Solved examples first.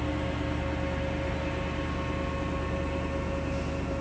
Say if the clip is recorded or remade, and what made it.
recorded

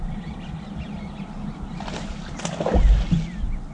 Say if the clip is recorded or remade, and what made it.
recorded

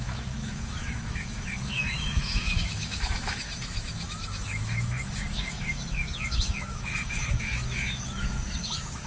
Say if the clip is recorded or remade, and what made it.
remade, autoencoder, DAC-VAE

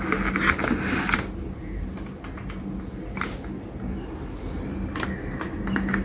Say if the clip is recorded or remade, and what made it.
recorded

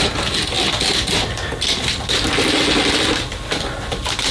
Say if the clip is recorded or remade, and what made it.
recorded